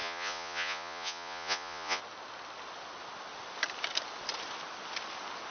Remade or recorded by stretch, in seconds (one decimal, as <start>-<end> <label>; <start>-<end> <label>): 0.0-2.0 remade; 2.0-5.5 recorded